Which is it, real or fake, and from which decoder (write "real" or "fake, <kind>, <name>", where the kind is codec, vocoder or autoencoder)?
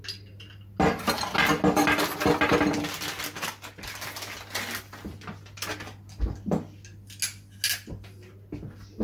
real